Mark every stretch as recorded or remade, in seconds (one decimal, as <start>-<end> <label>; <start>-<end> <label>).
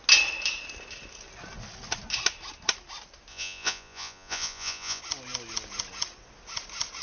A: 0.0-3.3 recorded; 3.3-5.0 remade; 5.0-7.0 recorded